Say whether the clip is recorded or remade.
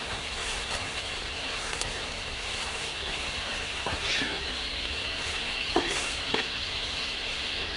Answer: remade